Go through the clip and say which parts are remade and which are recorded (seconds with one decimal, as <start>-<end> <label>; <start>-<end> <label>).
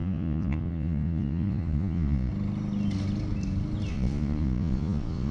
0.0-2.3 remade; 2.3-3.9 recorded; 3.9-5.3 remade